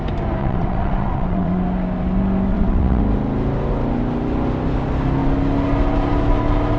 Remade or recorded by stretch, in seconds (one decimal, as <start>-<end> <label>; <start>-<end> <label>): 0.0-0.4 recorded; 0.4-1.6 remade; 1.6-2.5 recorded; 2.5-3.0 remade; 3.0-6.8 recorded